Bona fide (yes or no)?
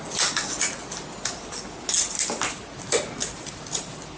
yes